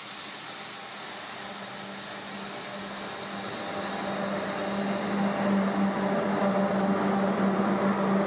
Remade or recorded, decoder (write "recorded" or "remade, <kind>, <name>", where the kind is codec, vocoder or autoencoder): recorded